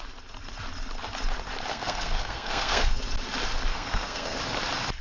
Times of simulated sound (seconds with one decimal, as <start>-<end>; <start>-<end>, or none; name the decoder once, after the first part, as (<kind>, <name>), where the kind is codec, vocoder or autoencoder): 1.7-3.0 (codec, SNAC); 3.7-4.4